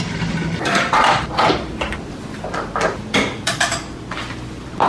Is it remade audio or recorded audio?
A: recorded